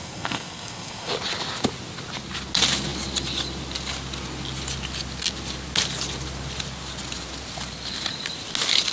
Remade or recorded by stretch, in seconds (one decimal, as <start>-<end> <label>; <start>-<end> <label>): 0.0-1.1 remade; 1.1-8.9 recorded